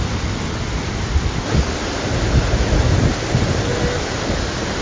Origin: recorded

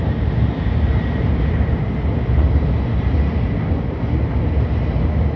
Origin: recorded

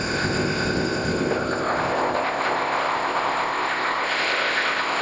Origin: remade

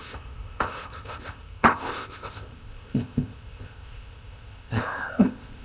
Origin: remade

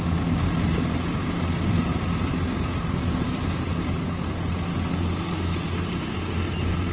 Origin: recorded